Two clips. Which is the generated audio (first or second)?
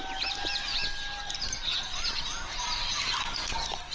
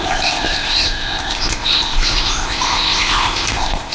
second